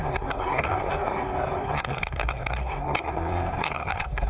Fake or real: fake